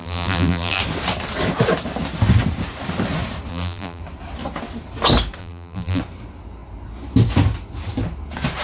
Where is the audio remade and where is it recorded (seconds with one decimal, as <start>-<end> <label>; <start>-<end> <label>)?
0.0-0.8 remade; 0.8-3.5 recorded; 3.5-4.0 remade; 4.0-5.4 recorded; 5.4-6.0 remade; 6.0-8.6 recorded